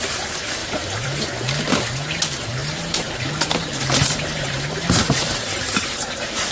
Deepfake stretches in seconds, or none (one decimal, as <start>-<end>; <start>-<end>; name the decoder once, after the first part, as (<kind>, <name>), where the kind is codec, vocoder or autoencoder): 0.6-1.2 (vocoder, BigVGAN v2); 2.6-6.5